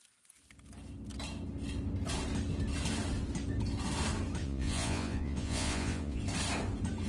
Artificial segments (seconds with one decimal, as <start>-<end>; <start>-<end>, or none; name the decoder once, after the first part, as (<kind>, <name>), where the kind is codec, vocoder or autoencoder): 4.4-6.2 (vocoder, Vocos)